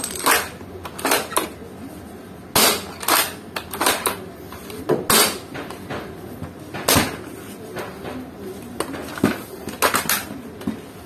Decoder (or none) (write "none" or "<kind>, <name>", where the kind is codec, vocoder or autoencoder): none